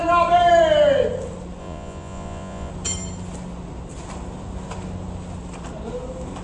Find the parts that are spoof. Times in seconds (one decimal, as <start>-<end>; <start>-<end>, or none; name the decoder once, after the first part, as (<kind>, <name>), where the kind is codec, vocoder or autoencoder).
1.6-2.7 (vocoder, Vocos)